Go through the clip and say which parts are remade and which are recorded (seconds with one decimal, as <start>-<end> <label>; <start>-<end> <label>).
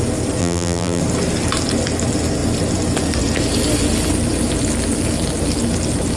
0.0-0.4 recorded; 0.4-1.0 remade; 1.0-6.2 recorded